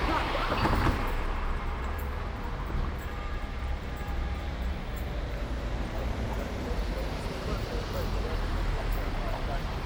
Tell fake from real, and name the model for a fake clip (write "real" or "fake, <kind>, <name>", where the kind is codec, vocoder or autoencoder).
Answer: fake, vocoder, BigVGAN v2